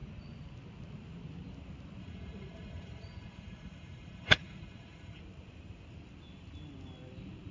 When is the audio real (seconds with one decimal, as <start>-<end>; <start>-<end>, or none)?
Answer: 0.0-2.0; 5.2-7.5